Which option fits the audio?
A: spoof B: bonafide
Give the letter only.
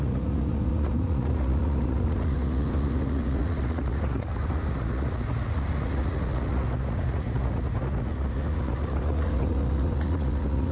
A